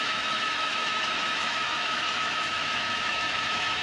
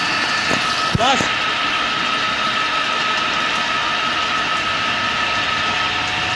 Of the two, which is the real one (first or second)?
second